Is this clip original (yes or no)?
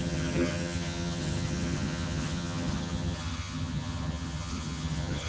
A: no